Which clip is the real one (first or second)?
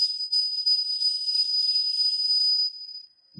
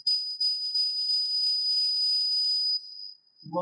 second